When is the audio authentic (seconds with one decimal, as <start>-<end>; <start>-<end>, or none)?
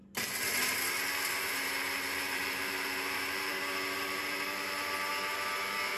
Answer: 0.0-1.5